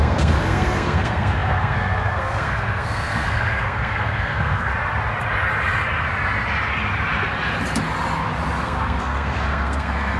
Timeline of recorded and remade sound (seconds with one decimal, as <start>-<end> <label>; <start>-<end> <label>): 0.0-4.7 remade; 4.7-8.6 recorded; 8.6-10.2 remade